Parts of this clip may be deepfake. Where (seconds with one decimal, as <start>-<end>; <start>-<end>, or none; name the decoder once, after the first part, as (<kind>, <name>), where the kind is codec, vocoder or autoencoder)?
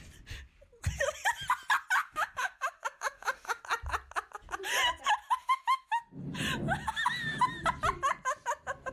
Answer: 2.0-3.6 (autoencoder, DAC-VAE); 5.4-6.0